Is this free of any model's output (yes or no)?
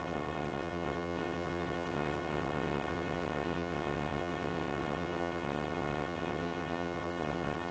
no